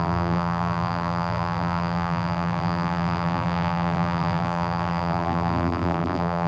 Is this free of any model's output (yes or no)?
no